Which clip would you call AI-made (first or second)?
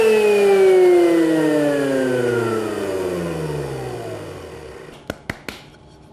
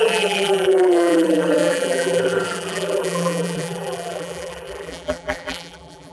second